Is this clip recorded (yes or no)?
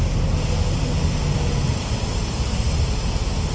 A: yes